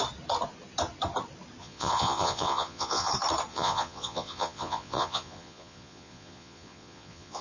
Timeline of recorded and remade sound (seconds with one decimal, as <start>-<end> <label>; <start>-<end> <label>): 0.0-1.6 recorded; 1.6-3.1 remade; 3.1-3.5 recorded; 3.5-7.4 remade